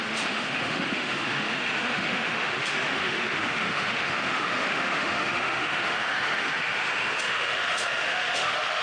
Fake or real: fake